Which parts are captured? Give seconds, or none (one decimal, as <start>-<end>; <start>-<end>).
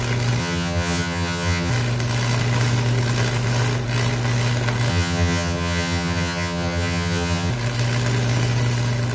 0.0-0.4; 1.7-4.9; 7.5-9.1